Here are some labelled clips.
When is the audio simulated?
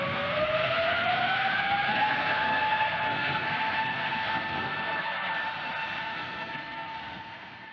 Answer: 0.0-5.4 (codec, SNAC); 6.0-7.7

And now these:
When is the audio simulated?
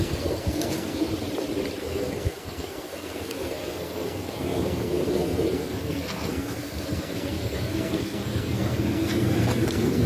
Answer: 0.0-1.1 (codec, SNAC); 1.8-10.1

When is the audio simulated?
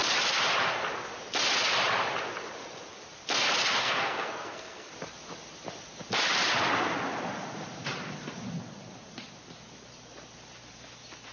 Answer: 3.8-4.9 (codec, SNAC)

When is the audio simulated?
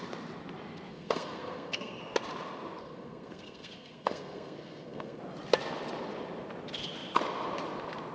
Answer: 0.9-2.0 (codec, SNAC); 2.8-5.2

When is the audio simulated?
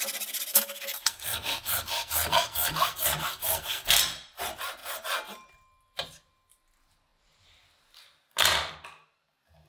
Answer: 0.5-4.0 (codec, SNAC)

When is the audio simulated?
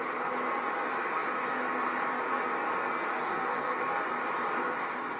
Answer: 3.1-3.8 (codec, SNAC)